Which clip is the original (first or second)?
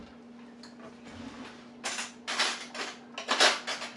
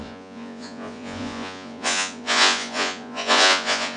first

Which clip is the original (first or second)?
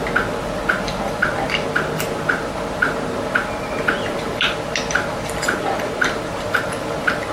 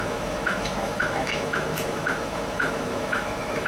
first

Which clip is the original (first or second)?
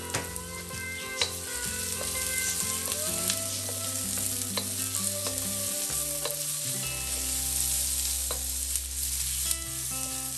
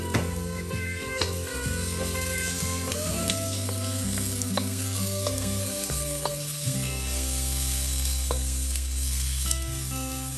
first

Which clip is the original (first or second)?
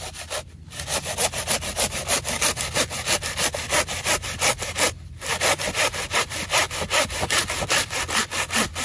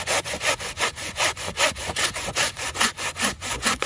first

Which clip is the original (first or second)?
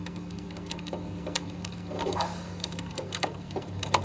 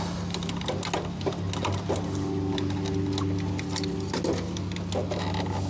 second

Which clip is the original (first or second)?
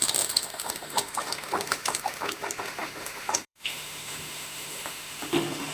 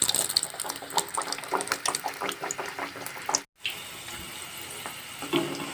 second